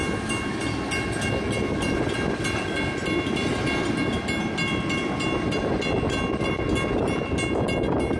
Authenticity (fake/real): real